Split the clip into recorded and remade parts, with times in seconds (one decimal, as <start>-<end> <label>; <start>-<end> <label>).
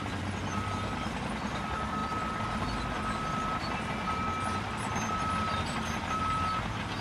0.0-7.0 recorded